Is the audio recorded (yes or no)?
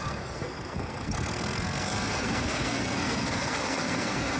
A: no